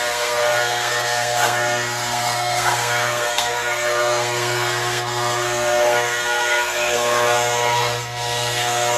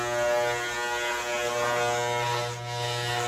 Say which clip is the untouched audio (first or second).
second